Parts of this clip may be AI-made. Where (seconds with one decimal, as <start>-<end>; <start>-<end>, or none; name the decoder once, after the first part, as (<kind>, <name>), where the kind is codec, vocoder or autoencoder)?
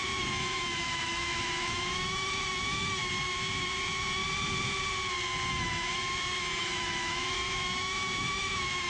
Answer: 0.0-4.2 (autoencoder, DAC-VAE); 5.5-8.9